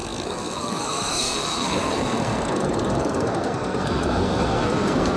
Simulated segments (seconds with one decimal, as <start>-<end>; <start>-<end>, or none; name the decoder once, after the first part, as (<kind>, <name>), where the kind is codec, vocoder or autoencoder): 0.0-5.2 (codec, SNAC)